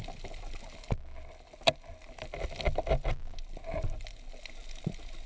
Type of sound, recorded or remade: recorded